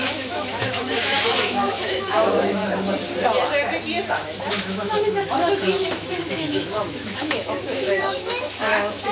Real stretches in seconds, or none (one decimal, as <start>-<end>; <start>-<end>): 2.6-4.1